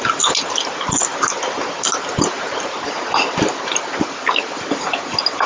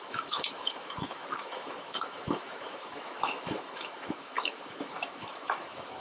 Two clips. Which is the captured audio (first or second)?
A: first